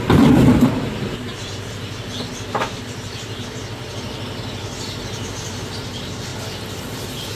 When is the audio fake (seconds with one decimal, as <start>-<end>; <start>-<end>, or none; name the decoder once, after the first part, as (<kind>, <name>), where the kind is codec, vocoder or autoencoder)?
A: 0.0-1.3 (vocoder, BigVGAN v2); 5.7-6.3; 6.8-7.4